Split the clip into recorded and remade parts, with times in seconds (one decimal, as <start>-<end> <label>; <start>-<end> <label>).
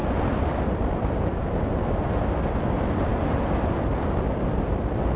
0.0-5.2 recorded